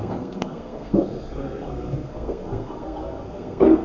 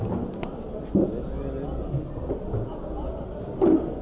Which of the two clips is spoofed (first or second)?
first